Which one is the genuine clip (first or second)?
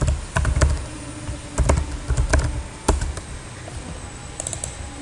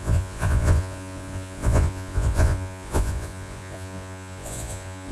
first